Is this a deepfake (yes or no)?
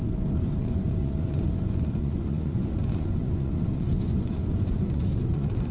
yes